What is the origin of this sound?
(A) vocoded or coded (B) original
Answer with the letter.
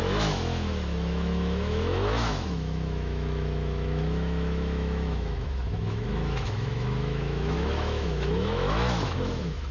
A